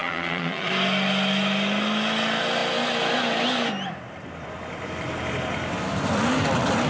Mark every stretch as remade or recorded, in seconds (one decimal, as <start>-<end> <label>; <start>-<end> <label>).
0.0-0.7 remade; 0.7-6.9 recorded